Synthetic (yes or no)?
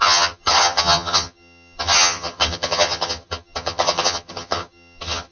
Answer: yes